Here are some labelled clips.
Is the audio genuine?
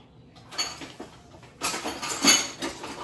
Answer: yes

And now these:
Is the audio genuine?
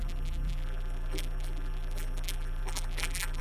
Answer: no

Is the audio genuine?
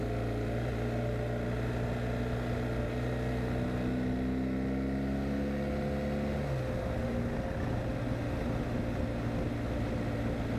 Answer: yes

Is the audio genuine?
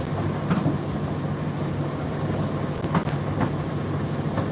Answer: yes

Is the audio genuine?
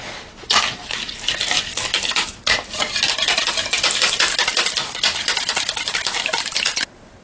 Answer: yes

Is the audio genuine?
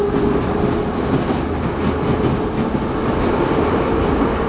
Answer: yes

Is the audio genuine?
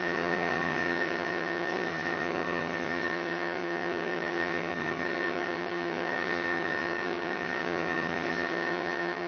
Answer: no